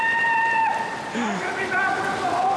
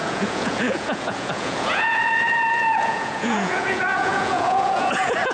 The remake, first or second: second